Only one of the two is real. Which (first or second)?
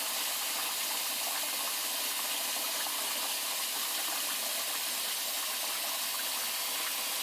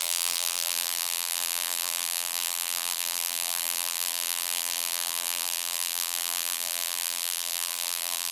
first